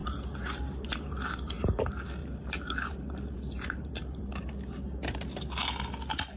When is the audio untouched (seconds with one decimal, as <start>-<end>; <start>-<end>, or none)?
1.8-2.2; 4.3-6.4